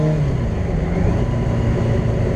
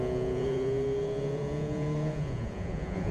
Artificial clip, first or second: second